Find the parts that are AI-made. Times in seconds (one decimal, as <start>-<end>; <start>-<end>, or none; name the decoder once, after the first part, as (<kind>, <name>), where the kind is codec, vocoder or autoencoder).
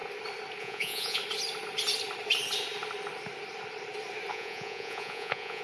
0.6-1.2 (vocoder, Vocos); 4.3-5.6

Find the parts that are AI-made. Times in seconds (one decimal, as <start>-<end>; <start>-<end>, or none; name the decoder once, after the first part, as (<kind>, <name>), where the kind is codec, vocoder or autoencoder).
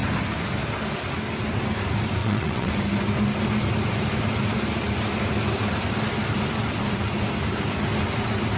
2.2-2.7 (vocoder, WaveNeXt)